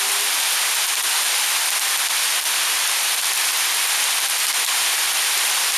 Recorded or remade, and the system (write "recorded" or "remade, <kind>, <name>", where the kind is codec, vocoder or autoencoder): recorded